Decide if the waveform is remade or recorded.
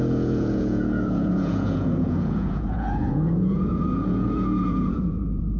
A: remade